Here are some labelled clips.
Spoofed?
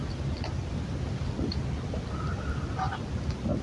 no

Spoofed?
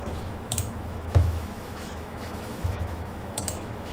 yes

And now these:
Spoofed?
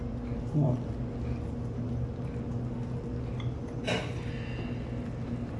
no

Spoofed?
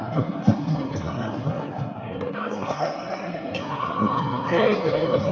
yes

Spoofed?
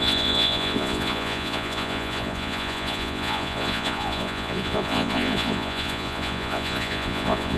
yes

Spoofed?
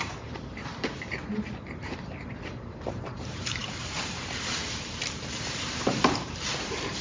yes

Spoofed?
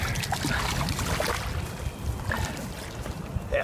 no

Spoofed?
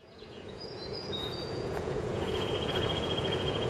yes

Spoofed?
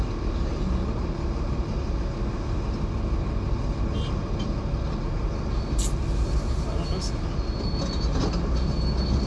no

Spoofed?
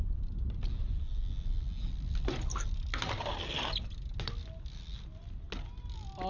no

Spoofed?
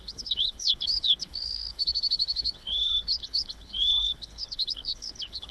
yes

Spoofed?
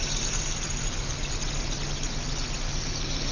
no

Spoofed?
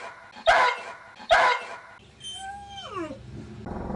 no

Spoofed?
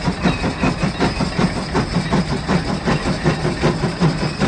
no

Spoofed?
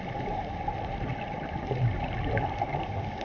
no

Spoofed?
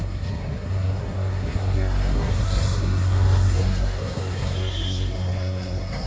yes